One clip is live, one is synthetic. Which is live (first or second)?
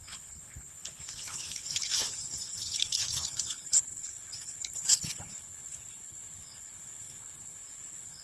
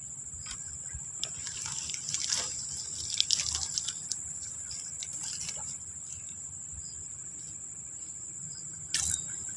second